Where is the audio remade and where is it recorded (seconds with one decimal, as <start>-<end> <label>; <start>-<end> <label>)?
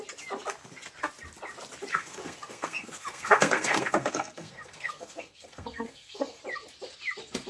0.0-1.9 recorded; 1.9-6.4 remade; 6.4-7.5 recorded